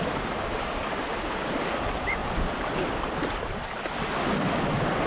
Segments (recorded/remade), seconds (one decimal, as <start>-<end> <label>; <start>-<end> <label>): 0.0-0.8 remade; 0.8-1.3 recorded; 1.3-2.2 remade; 2.2-5.1 recorded